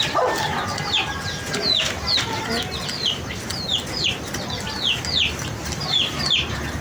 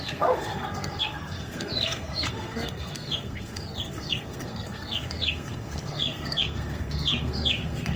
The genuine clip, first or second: first